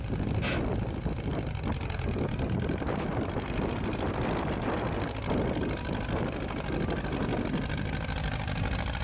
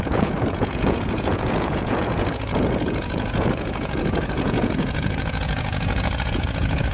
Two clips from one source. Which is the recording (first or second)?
first